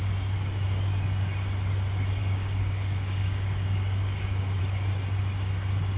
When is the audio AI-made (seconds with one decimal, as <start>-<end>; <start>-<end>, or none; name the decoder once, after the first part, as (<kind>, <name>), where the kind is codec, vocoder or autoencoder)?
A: 2.2-4.6 (codec, DAC)